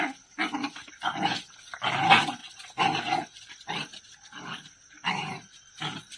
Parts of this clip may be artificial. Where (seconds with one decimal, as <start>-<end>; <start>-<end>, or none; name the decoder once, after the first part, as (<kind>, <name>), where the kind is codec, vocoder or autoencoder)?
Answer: none